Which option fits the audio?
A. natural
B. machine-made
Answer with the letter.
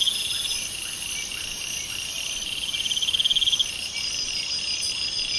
A